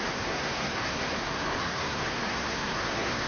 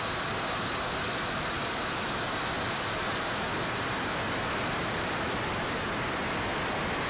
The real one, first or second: second